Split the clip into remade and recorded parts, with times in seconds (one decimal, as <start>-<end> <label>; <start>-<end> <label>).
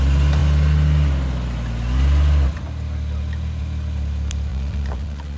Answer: 0.0-4.5 recorded; 4.5-5.4 remade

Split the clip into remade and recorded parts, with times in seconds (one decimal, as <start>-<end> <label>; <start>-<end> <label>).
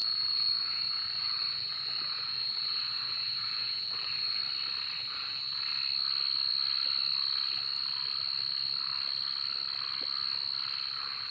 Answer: 0.0-4.4 remade; 4.4-11.3 recorded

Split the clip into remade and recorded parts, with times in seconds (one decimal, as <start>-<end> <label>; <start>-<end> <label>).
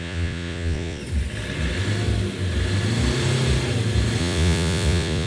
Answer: 0.0-1.0 remade; 1.0-4.2 recorded; 4.2-5.3 remade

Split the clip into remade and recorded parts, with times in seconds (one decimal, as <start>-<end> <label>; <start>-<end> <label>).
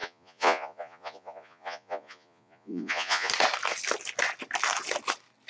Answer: 0.0-3.3 remade; 3.3-5.5 recorded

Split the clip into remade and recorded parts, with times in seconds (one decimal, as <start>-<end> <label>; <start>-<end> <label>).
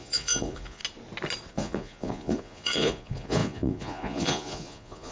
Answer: 0.0-0.8 remade; 0.8-1.5 recorded; 1.5-5.1 remade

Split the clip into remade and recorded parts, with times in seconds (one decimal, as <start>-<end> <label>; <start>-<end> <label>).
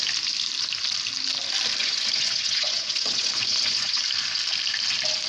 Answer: 0.0-1.8 recorded; 1.8-4.0 remade; 4.0-5.3 recorded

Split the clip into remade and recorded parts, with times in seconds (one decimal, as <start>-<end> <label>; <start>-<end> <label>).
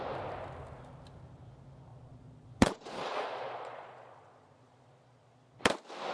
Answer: 0.0-1.9 recorded; 1.9-5.6 remade; 5.6-6.1 recorded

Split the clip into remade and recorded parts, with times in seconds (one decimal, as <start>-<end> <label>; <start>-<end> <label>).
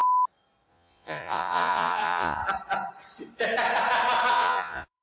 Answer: 0.0-0.7 recorded; 0.7-2.4 remade; 2.4-4.3 recorded; 4.3-5.0 remade